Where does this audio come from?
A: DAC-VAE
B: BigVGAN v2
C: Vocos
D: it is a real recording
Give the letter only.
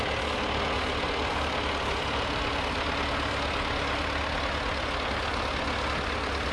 D